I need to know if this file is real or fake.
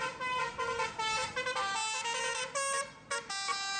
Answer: real